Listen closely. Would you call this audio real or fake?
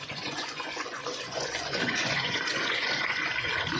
fake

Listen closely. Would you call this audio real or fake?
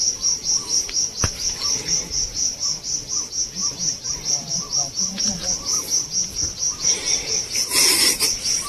real